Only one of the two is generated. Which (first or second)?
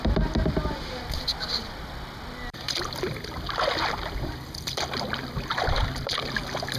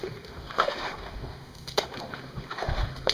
second